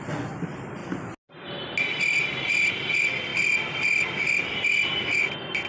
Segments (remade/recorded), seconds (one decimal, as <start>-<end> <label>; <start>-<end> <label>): 0.0-3.3 recorded; 3.3-5.2 remade; 5.2-5.7 recorded